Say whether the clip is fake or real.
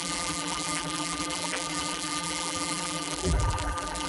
fake